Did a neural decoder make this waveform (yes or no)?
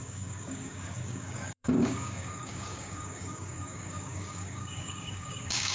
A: yes